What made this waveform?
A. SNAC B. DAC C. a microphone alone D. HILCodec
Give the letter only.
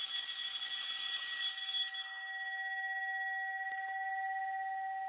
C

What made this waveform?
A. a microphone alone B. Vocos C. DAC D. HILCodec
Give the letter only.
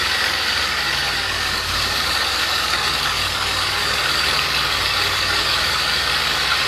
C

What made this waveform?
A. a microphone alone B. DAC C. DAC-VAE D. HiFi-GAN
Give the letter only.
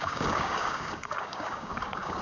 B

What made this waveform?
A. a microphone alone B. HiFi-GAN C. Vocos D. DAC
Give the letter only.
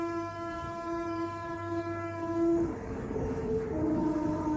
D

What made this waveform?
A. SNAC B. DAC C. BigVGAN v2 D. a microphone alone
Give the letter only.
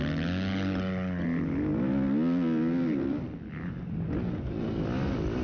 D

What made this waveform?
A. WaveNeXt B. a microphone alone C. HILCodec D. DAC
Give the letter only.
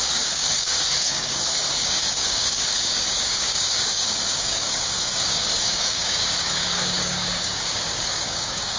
D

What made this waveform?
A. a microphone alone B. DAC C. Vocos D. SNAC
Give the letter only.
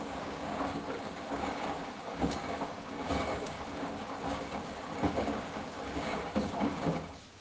B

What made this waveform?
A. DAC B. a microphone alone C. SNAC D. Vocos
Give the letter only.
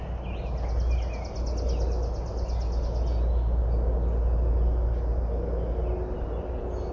B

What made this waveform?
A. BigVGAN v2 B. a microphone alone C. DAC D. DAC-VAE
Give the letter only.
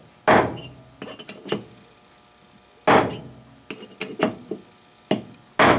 B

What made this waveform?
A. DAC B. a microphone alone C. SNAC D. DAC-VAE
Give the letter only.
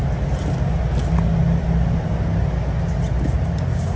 B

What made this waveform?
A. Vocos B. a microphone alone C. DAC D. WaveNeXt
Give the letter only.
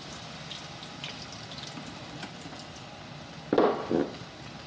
B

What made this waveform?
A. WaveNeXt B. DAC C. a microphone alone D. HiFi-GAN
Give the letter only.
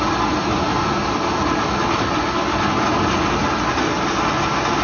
C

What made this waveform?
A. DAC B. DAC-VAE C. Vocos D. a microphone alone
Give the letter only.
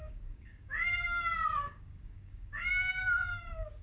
A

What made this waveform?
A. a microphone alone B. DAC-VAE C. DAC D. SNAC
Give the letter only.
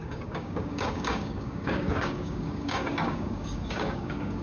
C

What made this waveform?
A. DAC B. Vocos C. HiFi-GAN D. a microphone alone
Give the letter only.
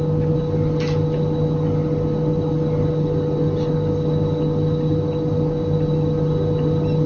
D